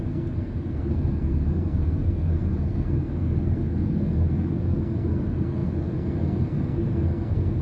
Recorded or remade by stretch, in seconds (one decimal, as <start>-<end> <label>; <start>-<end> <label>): 0.0-7.6 remade